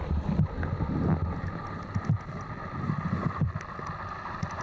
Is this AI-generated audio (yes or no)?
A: no